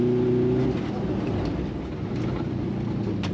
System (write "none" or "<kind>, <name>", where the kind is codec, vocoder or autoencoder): none